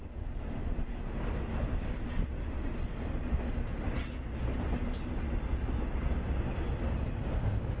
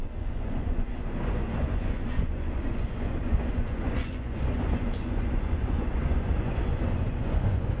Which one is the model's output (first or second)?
second